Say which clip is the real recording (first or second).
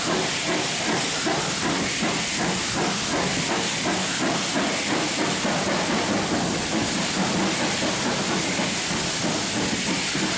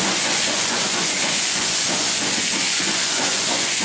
first